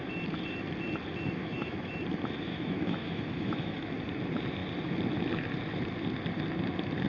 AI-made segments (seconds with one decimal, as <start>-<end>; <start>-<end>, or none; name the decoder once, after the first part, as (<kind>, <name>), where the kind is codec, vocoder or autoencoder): 1.4-1.9 (autoencoder, DAC-VAE); 2.5-3.9